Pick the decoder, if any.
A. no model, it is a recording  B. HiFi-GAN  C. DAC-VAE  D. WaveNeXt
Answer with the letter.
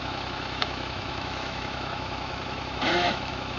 C